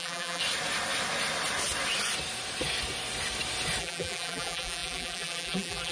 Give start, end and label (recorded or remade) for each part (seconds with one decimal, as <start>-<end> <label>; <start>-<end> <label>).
0.0-0.4 remade; 0.4-3.8 recorded; 3.8-5.9 remade